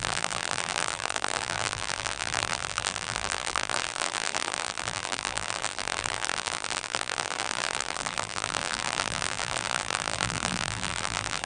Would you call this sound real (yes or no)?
no